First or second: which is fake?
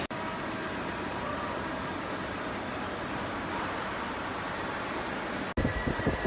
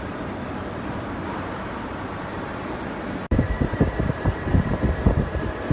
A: second